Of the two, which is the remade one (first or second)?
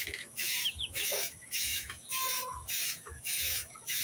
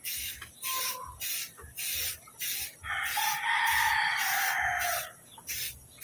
first